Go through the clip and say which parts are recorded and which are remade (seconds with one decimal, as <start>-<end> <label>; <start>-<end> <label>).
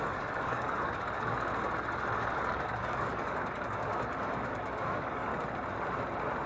0.0-1.5 remade; 1.5-2.4 recorded; 2.4-5.3 remade; 5.3-6.5 recorded